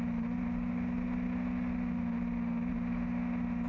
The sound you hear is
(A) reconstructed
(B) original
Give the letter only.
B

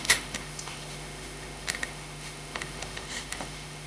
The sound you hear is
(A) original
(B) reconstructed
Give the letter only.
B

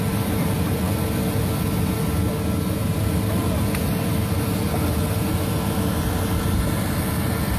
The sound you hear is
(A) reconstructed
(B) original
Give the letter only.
B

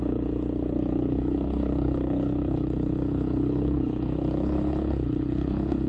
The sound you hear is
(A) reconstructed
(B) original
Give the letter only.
A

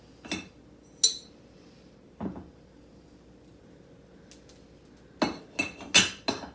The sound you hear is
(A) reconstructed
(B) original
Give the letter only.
B